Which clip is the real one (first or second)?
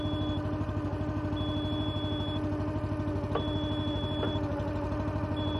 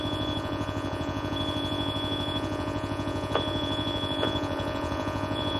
first